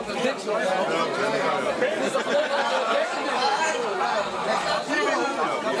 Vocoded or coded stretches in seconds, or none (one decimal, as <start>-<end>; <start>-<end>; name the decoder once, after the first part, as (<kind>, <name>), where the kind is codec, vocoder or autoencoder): none